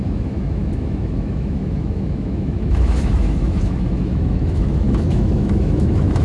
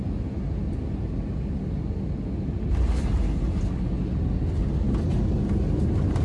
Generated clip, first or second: first